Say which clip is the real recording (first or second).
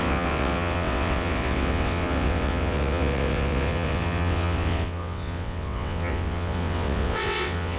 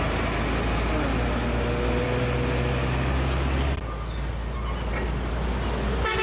second